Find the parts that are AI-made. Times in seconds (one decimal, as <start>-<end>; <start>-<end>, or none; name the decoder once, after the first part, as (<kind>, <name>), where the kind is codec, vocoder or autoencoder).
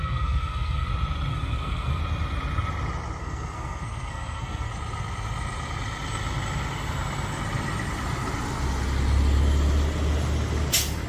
0.0-0.9 (codec, SNAC); 1.3-2.0; 3.2-4.7